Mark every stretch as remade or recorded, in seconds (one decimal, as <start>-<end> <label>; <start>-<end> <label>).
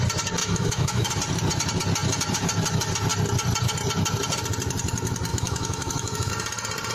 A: 0.0-0.4 recorded; 0.4-1.1 remade; 1.1-5.3 recorded; 5.3-6.3 remade; 6.3-6.9 recorded